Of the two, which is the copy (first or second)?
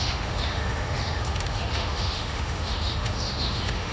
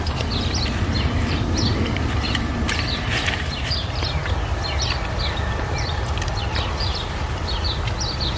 first